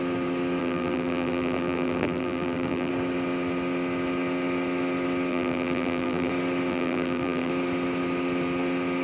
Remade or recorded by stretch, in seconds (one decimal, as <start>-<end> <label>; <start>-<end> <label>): 0.0-0.6 recorded; 0.6-2.9 remade; 2.9-5.3 recorded; 5.3-6.3 remade; 6.3-6.7 recorded; 6.7-7.5 remade; 7.5-9.0 recorded